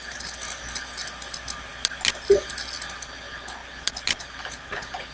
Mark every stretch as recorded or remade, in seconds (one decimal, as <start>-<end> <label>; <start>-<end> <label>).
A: 0.0-5.1 recorded